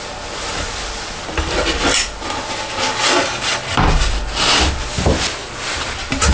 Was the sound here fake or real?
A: real